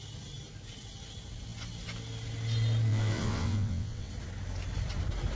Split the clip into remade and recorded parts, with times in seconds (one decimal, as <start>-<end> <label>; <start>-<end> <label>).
0.0-2.9 recorded; 2.9-4.1 remade; 4.1-5.3 recorded

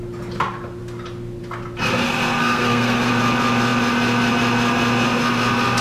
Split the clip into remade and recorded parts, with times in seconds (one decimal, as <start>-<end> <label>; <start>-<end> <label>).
0.0-2.4 recorded; 2.4-3.1 remade; 3.1-5.8 recorded